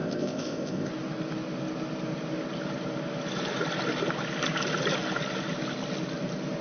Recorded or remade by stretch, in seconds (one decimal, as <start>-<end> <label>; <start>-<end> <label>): 0.0-0.9 remade; 0.9-6.6 recorded